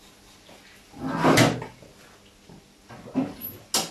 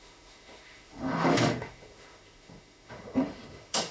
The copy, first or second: second